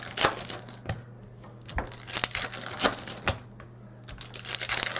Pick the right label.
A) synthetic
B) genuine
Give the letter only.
B